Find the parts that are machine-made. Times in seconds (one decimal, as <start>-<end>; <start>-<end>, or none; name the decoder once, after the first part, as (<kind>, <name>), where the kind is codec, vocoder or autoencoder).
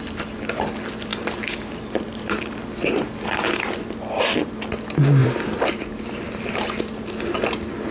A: 1.1-4.6 (vocoder, BigVGAN v2); 5.2-6.0